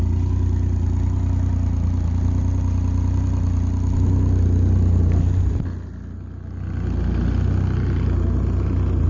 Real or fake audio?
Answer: real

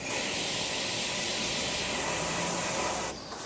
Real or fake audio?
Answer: real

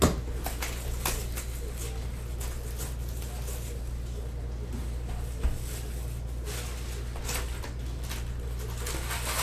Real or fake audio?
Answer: real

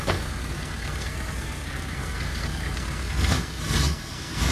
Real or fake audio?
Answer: fake